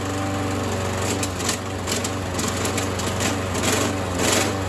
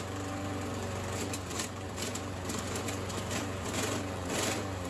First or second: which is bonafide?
first